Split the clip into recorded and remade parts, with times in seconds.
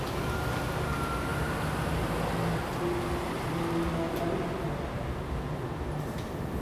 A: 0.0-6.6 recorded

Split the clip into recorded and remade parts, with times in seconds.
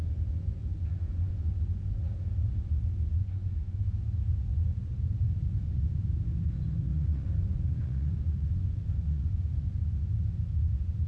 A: 0.0-0.6 recorded; 0.6-2.1 remade; 2.1-3.2 recorded; 3.2-3.8 remade; 3.8-5.4 recorded; 5.4-6.0 remade; 6.0-6.9 recorded; 6.9-9.8 remade; 9.8-11.1 recorded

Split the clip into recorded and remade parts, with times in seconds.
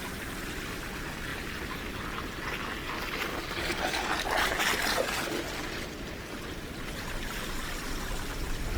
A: 0.0-8.8 recorded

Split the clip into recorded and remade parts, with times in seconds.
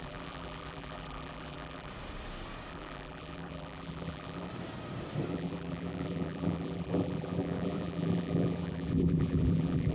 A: 0.0-1.9 remade; 1.9-2.7 recorded; 2.7-4.5 remade; 4.5-5.3 recorded; 5.3-9.9 remade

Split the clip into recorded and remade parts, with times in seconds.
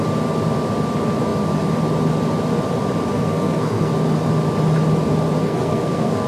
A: 0.0-3.1 recorded; 3.1-3.9 remade; 3.9-5.4 recorded; 5.4-6.3 remade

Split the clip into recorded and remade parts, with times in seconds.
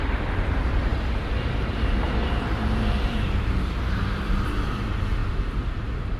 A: 0.0-6.2 remade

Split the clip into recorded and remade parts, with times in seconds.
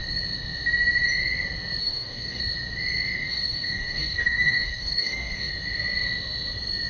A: 0.0-1.8 recorded; 1.8-2.4 remade; 2.4-3.3 recorded; 3.3-5.5 remade; 5.5-6.9 recorded